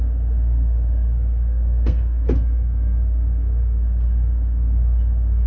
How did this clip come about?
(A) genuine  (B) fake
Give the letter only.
B